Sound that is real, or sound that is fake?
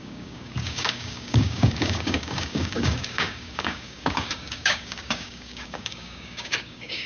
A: fake